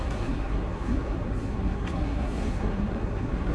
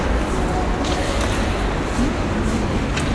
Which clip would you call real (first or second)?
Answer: second